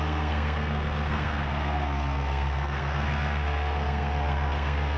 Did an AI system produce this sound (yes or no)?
yes